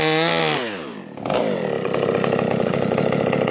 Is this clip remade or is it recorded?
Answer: recorded